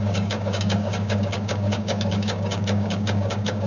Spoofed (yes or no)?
yes